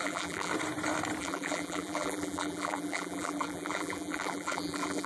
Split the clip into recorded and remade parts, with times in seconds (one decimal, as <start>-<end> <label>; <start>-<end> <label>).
0.0-0.5 remade; 0.5-1.2 recorded; 1.2-5.1 remade